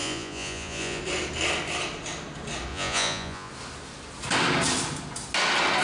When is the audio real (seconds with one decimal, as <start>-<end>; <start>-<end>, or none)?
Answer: 1.0-2.7; 3.5-5.8